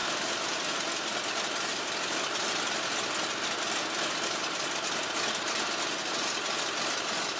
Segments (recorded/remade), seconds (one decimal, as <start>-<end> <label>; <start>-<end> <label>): 0.0-7.4 recorded